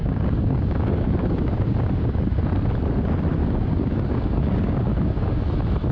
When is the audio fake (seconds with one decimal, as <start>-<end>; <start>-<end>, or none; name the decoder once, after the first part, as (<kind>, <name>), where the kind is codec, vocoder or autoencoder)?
0.0-2.4 (codec, DAC); 3.4-5.4